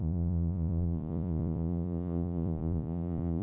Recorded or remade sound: remade